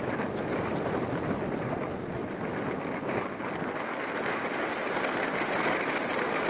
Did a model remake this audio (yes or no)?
no